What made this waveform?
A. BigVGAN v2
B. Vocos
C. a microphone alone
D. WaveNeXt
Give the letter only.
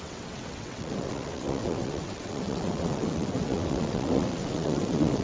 D